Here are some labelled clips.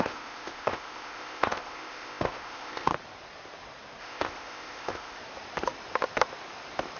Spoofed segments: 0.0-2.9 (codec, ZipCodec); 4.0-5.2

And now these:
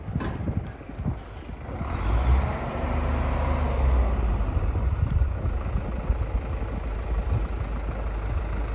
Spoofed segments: none

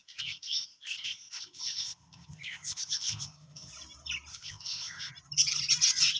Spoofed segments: 0.0-3.7 (codec, ZipCodec); 4.3-5.1

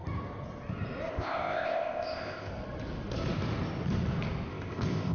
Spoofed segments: 1.1-2.5 (codec, ZipCodec); 4.5-5.1

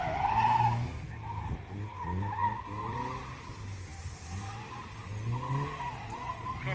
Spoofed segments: none

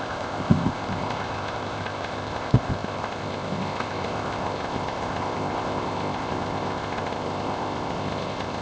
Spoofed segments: 0.0-8.6 (codec, ZipCodec)